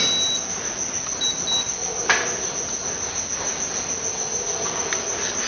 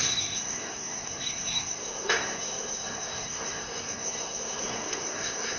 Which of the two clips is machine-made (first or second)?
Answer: second